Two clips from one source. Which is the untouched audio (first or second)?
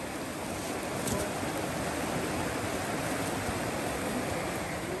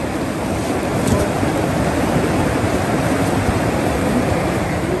first